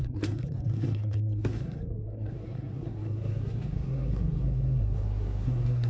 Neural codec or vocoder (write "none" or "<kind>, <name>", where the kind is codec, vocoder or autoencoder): codec, SNAC